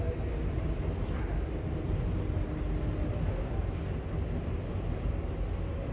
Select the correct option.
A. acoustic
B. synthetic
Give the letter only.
A